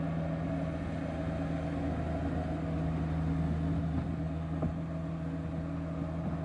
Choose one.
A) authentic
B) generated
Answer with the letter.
A